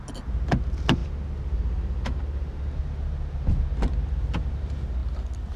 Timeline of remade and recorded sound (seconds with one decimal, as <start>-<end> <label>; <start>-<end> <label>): 0.0-5.6 recorded